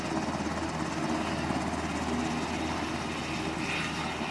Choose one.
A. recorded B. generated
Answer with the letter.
A